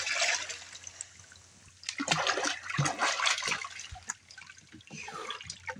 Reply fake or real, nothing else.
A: real